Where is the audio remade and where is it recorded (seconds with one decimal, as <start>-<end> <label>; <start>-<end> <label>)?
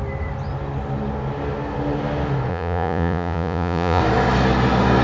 0.0-2.5 recorded; 2.5-4.0 remade; 4.0-5.0 recorded